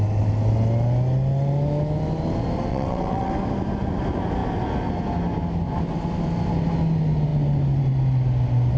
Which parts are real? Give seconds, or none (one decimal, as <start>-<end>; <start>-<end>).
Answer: 0.0-2.7; 3.3-8.8